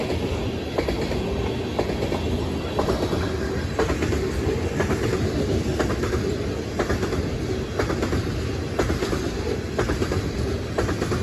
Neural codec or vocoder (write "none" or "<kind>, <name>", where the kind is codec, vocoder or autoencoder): none